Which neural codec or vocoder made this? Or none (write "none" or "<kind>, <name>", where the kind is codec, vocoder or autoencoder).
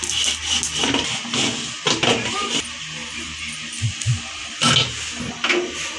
none